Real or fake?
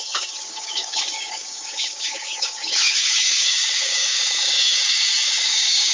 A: fake